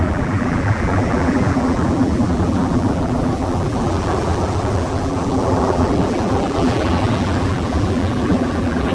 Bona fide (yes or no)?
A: no